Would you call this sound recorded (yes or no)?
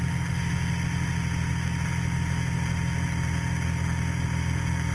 yes